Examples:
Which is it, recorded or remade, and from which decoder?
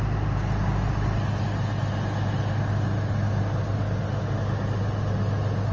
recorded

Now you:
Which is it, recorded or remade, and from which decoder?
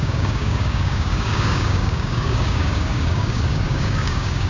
remade, codec, DAC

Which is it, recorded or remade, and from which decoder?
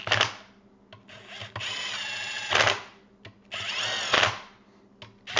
recorded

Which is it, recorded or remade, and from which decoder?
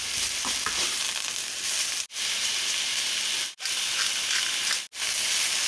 recorded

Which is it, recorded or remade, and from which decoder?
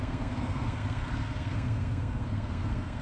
remade, codec, SNAC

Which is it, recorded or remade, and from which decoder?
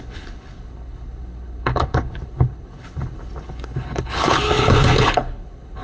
remade, codec, HILCodec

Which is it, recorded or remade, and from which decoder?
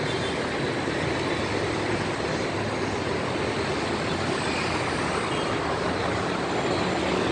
recorded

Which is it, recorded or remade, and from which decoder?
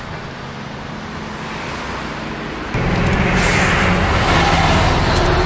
recorded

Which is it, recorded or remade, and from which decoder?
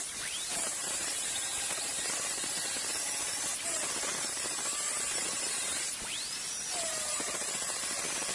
remade, vocoder, BigVGAN v2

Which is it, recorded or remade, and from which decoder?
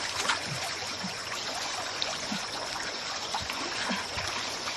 remade, vocoder, Vocos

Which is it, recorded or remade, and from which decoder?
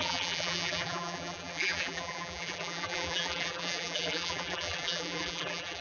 remade, vocoder, BigVGAN v2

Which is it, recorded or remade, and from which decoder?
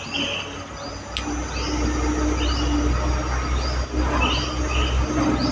recorded